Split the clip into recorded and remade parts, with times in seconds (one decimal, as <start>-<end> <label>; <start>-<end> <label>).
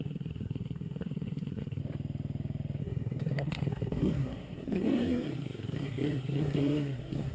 0.0-1.8 remade; 1.8-2.8 recorded; 2.8-7.3 remade